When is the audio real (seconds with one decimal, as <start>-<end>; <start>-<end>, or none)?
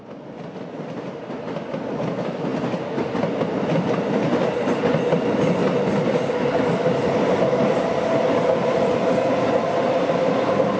0.0-10.8